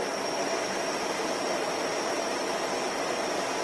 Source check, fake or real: real